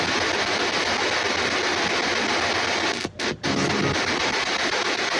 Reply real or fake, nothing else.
real